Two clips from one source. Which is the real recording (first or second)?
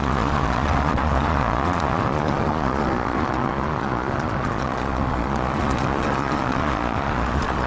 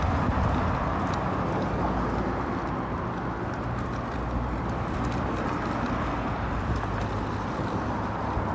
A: second